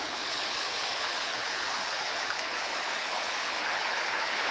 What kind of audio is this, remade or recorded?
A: remade